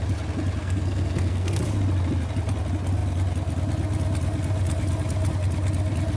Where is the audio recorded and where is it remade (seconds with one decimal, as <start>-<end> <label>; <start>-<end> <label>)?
0.0-0.6 recorded; 0.6-1.6 remade; 1.6-6.2 recorded